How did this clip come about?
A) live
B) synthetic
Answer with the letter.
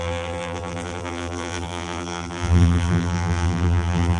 B